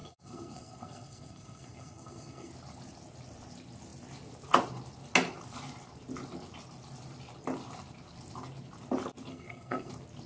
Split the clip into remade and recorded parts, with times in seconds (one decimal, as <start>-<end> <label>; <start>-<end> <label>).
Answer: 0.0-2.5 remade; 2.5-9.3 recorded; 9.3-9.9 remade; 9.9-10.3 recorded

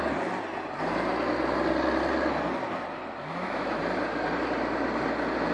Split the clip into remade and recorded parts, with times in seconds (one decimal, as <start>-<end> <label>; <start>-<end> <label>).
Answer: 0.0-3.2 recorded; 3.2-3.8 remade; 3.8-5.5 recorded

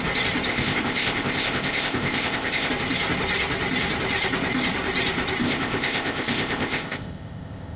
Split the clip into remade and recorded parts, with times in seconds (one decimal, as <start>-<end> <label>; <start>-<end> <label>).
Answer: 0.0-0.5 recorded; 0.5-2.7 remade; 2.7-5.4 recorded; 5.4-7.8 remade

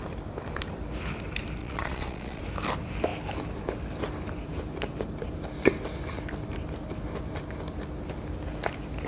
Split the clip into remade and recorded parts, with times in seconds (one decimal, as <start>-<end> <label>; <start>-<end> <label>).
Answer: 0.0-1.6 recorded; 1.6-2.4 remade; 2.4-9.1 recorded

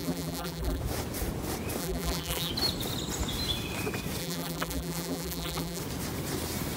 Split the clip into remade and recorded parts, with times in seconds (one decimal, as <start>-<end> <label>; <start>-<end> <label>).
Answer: 0.0-0.8 remade; 0.8-1.8 recorded; 1.8-2.5 remade; 2.5-4.2 recorded; 4.2-5.8 remade; 5.8-6.8 recorded